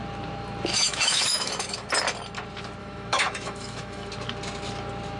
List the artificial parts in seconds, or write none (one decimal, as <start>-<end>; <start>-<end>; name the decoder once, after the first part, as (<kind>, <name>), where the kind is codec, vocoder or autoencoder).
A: 0.7-1.9 (autoencoder, DAC-VAE); 2.8-4.1